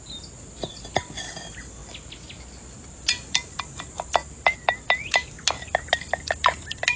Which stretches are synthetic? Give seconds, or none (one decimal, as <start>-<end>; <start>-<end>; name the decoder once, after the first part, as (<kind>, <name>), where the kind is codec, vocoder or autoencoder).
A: none